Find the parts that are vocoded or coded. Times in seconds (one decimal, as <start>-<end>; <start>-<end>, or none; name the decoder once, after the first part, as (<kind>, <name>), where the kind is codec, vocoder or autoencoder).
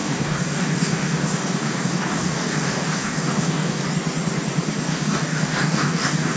0.0-3.8 (codec, DAC); 4.9-6.4